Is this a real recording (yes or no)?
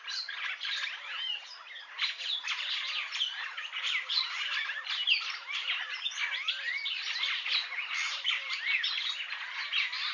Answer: yes